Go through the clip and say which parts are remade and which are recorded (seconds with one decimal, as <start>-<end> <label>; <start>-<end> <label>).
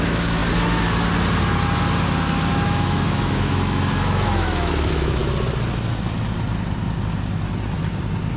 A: 0.0-0.4 remade; 0.4-2.5 recorded; 2.5-5.2 remade; 5.2-8.4 recorded